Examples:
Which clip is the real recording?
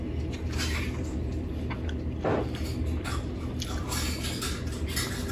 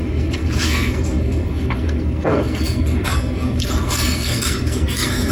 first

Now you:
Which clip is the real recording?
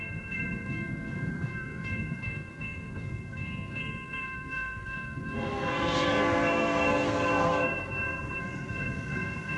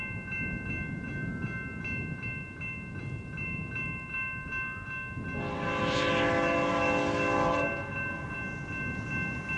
second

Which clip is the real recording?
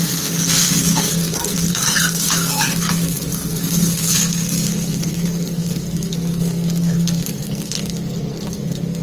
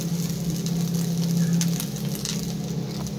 second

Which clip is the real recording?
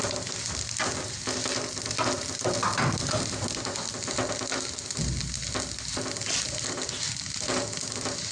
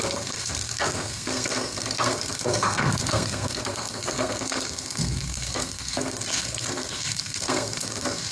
first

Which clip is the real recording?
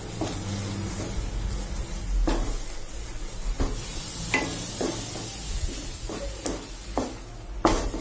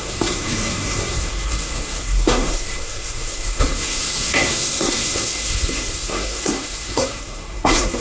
first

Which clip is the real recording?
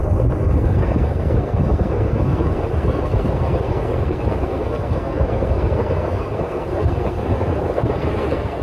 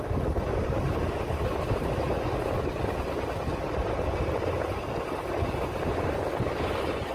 second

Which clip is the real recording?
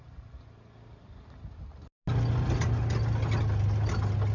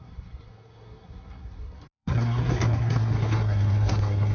first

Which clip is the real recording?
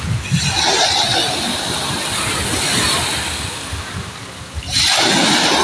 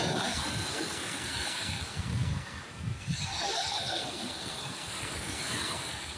first